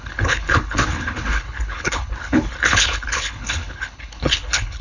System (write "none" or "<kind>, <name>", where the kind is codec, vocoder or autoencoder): codec, HILCodec